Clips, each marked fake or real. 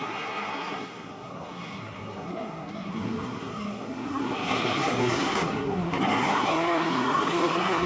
fake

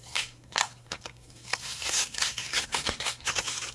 fake